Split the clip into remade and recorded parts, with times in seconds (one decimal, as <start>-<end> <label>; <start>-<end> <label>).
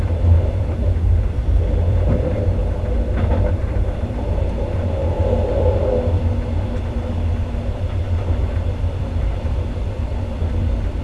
0.0-1.4 remade; 1.4-1.9 recorded; 1.9-2.6 remade; 2.6-3.5 recorded; 3.5-5.0 remade; 5.0-8.4 recorded; 8.4-11.0 remade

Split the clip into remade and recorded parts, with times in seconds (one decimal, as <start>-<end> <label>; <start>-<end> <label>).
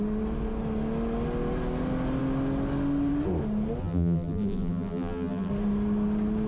0.0-3.8 recorded; 3.8-5.5 remade; 5.5-6.5 recorded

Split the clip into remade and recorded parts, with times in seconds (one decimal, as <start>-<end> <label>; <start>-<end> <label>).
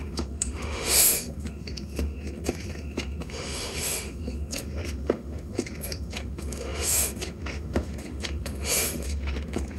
0.0-9.8 remade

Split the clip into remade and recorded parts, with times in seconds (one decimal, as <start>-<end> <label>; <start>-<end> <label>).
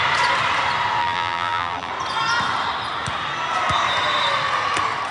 0.0-1.0 recorded; 1.0-1.9 remade; 1.9-5.1 recorded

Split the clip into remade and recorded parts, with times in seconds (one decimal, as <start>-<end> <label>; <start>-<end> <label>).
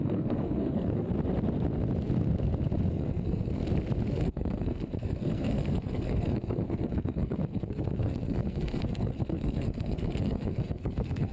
0.0-1.1 remade; 1.1-2.9 recorded; 2.9-3.6 remade; 3.6-4.1 recorded; 4.1-11.3 remade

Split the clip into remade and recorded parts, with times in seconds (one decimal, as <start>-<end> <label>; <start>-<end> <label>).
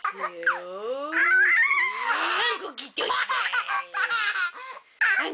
0.0-5.3 recorded